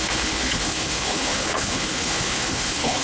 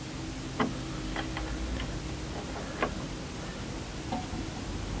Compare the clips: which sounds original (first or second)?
second